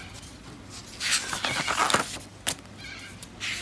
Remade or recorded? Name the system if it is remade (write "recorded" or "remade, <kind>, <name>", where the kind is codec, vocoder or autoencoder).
recorded